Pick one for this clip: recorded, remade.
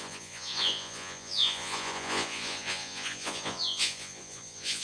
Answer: remade